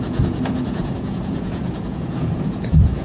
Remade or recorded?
remade